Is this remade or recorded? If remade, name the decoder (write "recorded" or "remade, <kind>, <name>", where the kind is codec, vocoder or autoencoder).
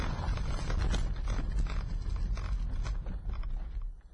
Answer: recorded